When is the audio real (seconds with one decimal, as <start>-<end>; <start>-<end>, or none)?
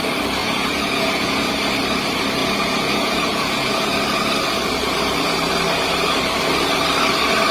0.0-0.4; 1.5-2.4; 3.9-7.5